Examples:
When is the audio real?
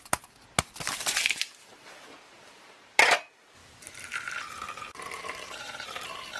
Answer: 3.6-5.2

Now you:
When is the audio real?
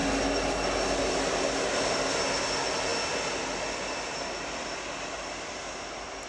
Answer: 0.0-6.3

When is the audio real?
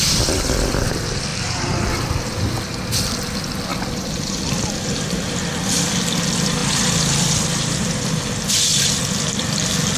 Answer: 0.0-1.3; 2.5-3.7; 4.4-6.6; 8.0-8.7; 9.4-10.0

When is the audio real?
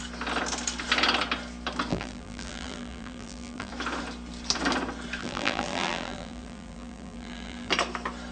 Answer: 0.0-1.9; 3.7-5.2; 7.7-8.3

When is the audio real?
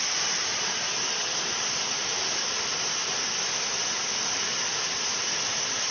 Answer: 1.2-2.3; 3.0-4.8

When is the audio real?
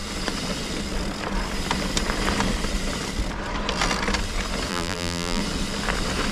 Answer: 0.0-4.7; 5.4-6.3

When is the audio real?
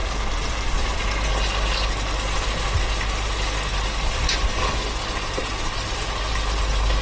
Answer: 1.0-3.7; 4.6-7.0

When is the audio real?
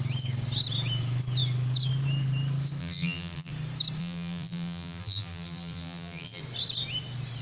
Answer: 0.0-2.8; 3.5-4.0; 6.4-7.4